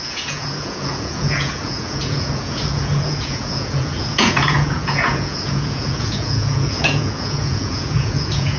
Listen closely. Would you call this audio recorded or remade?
remade